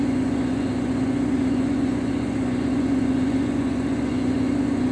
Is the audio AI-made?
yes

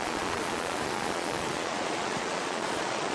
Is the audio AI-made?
yes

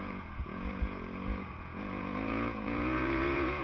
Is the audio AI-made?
yes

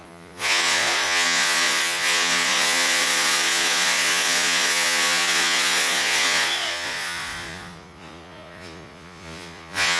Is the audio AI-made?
yes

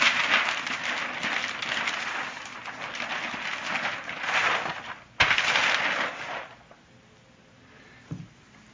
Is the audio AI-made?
no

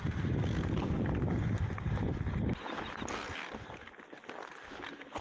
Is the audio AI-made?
no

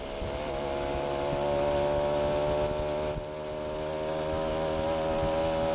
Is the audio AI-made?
no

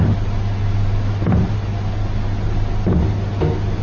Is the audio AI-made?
no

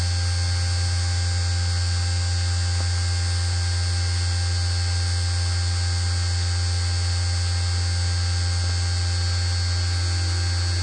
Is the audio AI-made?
no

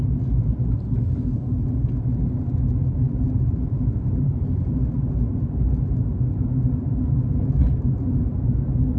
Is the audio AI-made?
no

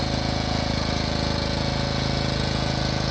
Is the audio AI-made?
yes